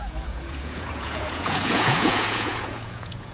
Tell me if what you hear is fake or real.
fake